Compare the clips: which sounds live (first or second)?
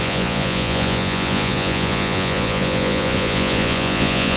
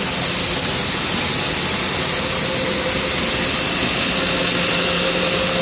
second